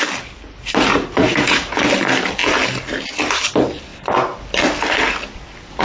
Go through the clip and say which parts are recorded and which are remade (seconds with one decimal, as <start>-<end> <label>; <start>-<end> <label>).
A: 0.0-0.9 recorded; 0.9-1.7 remade; 1.7-5.8 recorded